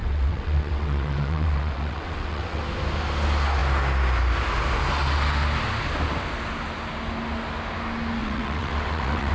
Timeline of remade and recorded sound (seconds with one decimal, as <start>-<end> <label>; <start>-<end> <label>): 0.0-2.6 remade; 2.6-8.2 recorded; 8.2-9.3 remade